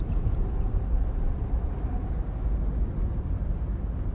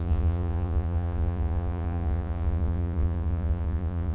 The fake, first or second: second